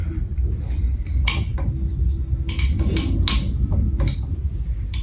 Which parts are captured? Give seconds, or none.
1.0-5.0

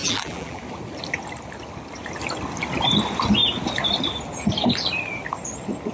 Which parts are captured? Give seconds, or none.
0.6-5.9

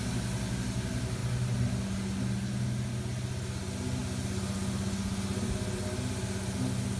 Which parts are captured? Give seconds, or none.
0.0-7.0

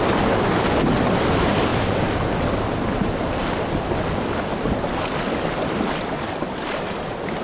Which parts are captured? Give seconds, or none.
0.0-7.4

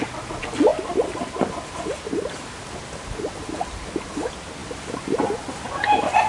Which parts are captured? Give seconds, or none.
0.0-0.7; 2.3-4.6; 5.3-6.3